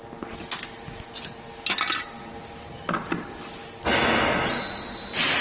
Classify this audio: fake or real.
real